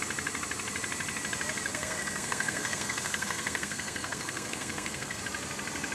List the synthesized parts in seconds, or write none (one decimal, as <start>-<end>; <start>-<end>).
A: 1.7-5.2